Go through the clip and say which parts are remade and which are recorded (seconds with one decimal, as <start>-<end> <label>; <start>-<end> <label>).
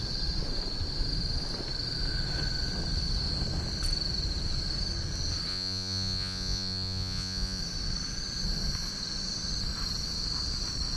0.0-5.5 recorded; 5.5-7.6 remade; 7.6-11.0 recorded